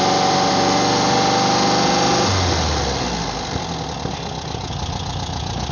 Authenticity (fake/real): real